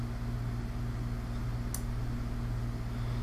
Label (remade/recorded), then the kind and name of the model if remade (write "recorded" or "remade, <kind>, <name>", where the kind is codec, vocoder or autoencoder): recorded